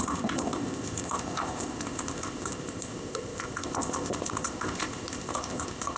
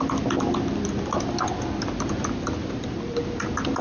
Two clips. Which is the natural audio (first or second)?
second